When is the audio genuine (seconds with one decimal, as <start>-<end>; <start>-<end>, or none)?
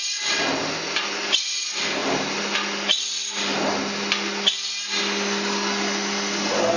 0.0-6.8